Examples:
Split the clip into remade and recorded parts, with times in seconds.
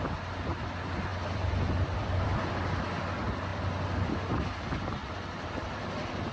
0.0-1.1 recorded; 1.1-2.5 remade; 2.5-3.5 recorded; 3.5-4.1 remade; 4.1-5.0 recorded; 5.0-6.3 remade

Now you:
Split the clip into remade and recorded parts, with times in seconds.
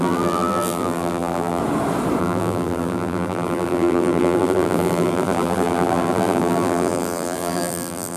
0.0-1.6 remade; 1.6-2.2 recorded; 2.2-8.2 remade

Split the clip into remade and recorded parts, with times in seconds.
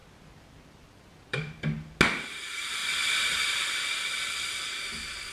0.0-2.0 remade; 2.0-5.3 recorded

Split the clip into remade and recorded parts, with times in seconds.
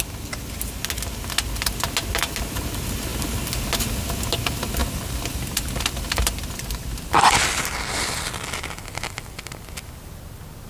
0.0-4.8 recorded; 4.8-9.3 remade; 9.3-10.7 recorded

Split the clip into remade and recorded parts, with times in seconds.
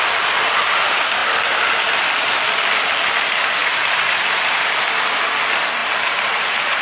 0.0-3.6 recorded; 3.6-4.7 remade; 4.7-5.8 recorded; 5.8-6.8 remade